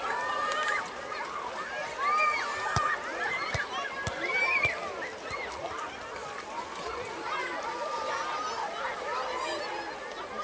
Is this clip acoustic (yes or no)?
yes